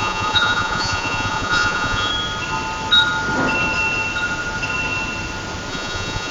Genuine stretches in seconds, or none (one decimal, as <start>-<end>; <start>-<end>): 2.1-5.7